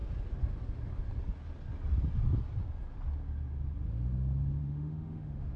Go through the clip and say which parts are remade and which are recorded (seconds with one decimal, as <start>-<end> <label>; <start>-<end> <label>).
0.0-4.6 recorded; 4.6-5.6 remade